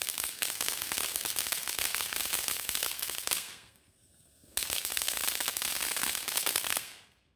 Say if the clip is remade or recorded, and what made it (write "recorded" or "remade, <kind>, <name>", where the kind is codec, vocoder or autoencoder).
remade, codec, SNAC